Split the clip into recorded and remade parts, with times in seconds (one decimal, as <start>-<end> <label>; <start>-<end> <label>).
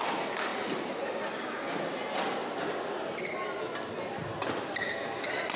0.0-5.6 recorded